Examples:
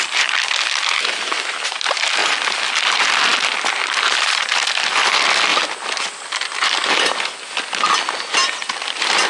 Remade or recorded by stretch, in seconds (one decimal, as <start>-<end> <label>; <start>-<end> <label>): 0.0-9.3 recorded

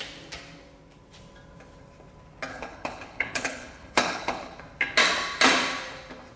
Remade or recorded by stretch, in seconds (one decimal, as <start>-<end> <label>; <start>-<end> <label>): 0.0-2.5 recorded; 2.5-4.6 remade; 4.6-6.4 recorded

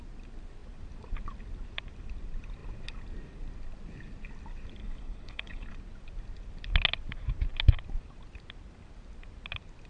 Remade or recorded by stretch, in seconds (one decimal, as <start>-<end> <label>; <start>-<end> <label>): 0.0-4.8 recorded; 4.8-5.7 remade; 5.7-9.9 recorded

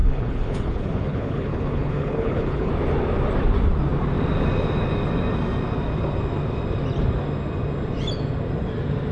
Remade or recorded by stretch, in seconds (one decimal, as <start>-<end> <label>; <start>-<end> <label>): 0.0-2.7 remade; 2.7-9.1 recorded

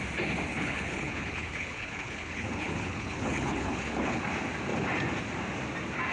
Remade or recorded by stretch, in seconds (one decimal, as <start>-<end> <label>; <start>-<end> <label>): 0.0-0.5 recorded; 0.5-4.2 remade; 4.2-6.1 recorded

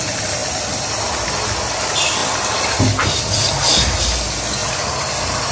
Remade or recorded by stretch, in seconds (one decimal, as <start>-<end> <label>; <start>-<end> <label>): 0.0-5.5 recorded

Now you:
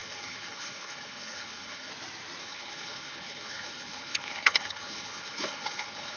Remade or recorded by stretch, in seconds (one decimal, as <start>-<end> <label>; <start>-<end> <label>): 0.0-1.9 remade; 1.9-2.4 recorded; 2.4-6.2 remade